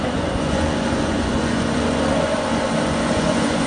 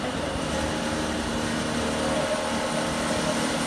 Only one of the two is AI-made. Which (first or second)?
first